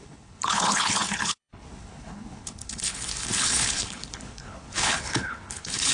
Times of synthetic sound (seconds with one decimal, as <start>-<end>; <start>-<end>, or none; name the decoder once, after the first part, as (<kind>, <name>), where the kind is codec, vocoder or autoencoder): 0.0-5.9 (codec, HILCodec)